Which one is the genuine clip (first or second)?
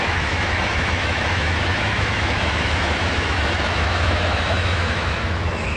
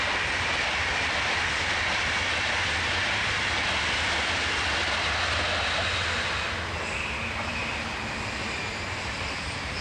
second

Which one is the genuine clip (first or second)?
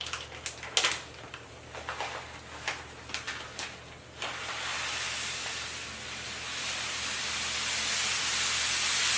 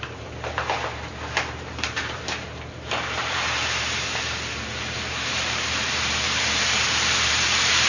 first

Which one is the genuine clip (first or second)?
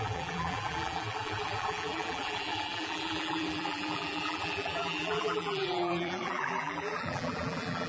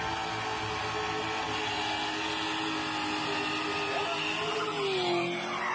second